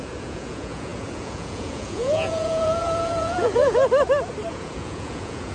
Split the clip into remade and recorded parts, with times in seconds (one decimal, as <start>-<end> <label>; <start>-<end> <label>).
0.0-3.8 remade; 3.8-4.5 recorded; 4.5-5.5 remade